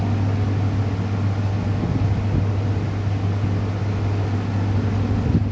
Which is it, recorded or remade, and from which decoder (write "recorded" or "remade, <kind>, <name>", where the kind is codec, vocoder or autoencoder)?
recorded